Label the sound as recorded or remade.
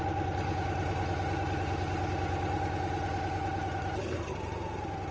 recorded